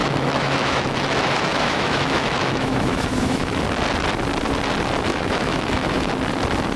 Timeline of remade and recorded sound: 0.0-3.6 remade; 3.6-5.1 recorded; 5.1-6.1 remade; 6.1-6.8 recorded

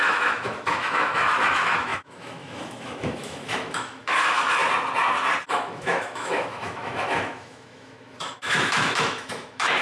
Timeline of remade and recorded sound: 0.0-4.6 remade; 4.6-5.5 recorded; 5.5-9.8 remade

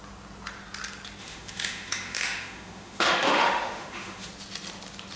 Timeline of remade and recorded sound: 0.0-1.2 recorded; 1.2-4.3 remade; 4.3-5.2 recorded

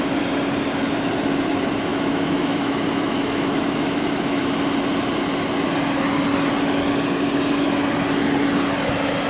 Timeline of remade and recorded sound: 0.0-1.9 recorded; 1.9-4.5 remade; 4.5-9.3 recorded

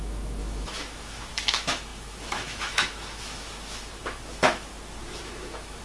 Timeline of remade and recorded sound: 0.0-4.7 remade; 4.7-5.2 recorded; 5.2-5.8 remade

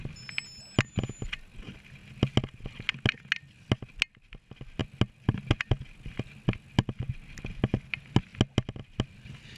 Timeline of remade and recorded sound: 0.0-9.6 recorded